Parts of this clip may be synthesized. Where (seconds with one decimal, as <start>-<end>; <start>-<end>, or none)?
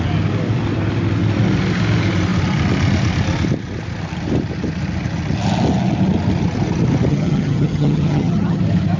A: 7.1-8.6